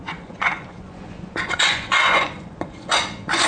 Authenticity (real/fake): fake